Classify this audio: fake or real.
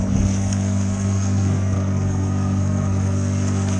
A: fake